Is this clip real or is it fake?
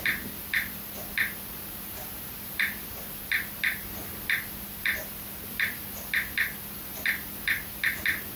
real